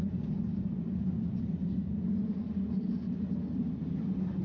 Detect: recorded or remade recorded